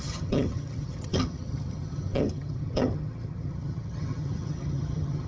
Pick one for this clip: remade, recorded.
remade